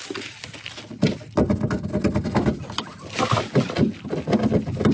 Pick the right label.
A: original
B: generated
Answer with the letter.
A